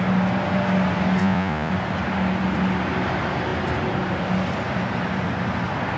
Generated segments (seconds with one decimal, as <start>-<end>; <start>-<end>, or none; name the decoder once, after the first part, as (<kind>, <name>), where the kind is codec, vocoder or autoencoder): 1.2-1.7 (vocoder, Vocos)